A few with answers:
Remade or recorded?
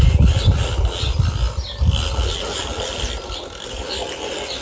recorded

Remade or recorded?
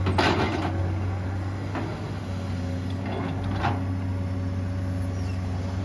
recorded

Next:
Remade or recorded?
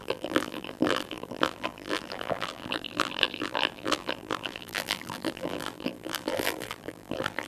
remade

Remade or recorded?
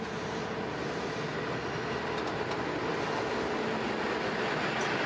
recorded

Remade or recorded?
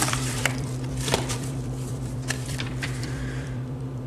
remade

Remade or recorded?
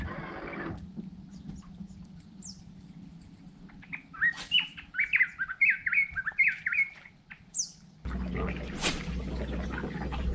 recorded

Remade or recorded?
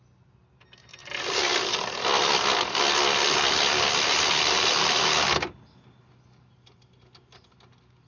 recorded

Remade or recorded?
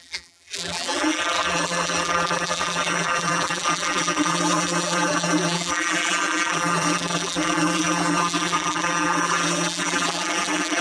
remade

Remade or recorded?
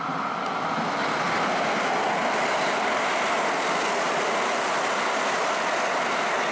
recorded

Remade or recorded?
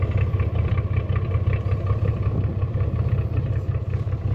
recorded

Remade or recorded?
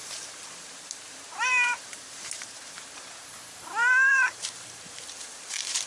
remade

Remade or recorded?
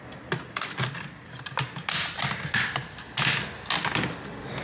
recorded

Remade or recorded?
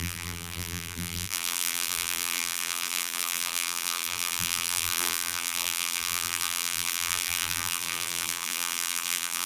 remade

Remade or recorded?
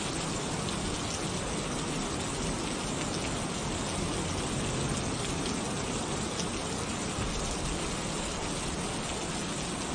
recorded